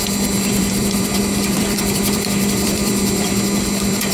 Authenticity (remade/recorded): remade